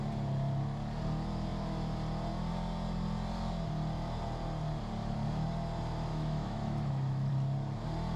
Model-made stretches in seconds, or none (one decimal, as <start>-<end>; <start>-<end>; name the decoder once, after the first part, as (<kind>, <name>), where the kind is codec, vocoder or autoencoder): 6.1-7.3 (autoencoder, DAC-VAE)